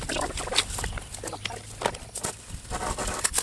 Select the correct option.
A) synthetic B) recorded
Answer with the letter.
B